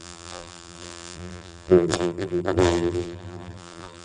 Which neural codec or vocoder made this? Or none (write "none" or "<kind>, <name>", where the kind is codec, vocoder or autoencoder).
vocoder, BigVGAN v2